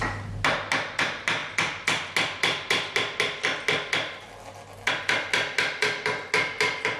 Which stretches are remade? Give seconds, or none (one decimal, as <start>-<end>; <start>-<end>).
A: none